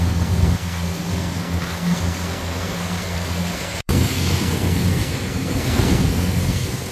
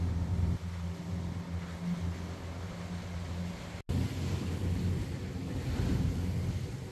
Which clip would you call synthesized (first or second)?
first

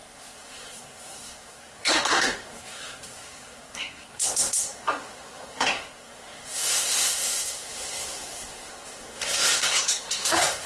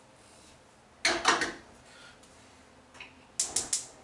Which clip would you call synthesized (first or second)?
first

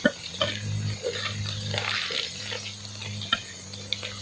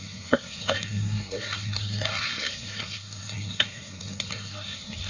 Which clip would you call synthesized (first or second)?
second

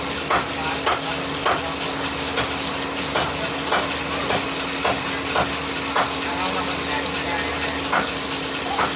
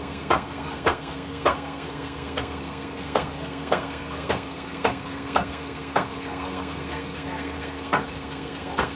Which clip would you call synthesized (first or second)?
second